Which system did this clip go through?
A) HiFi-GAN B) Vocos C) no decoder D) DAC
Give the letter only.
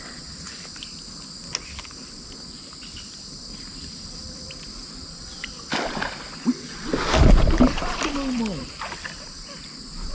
C